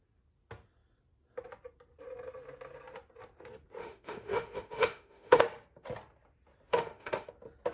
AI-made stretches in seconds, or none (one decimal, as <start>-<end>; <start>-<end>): 3.8-5.4; 6.7-7.3